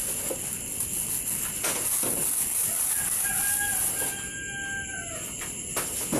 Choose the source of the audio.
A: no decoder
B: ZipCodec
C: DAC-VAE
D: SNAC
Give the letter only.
A